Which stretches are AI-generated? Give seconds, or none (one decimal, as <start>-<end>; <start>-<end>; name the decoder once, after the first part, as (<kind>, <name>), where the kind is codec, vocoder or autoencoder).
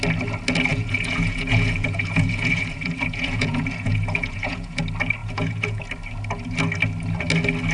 0.7-4.8 (vocoder, Vocos); 5.2-5.8